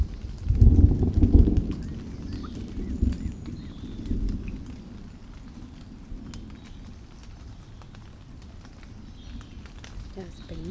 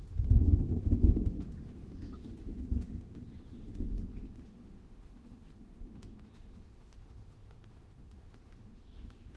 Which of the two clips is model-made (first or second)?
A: second